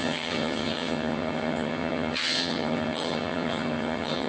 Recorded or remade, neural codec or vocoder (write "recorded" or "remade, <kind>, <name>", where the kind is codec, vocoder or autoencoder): remade, vocoder, HiFi-GAN